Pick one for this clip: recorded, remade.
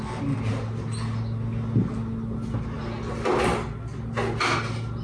recorded